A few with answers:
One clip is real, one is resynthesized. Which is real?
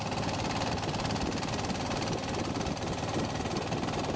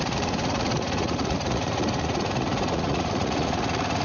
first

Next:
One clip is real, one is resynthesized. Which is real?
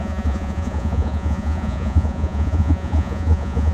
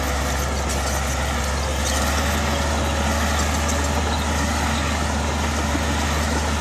second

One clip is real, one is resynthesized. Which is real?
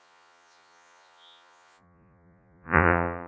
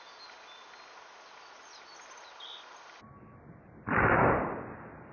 second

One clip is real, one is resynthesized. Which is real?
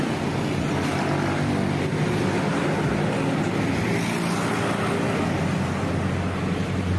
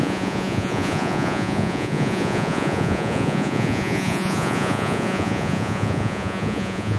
first